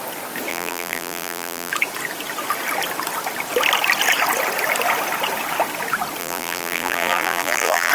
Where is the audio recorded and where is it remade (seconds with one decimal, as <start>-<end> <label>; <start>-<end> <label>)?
0.0-0.5 recorded; 0.5-1.7 remade; 1.7-6.2 recorded; 6.2-7.9 remade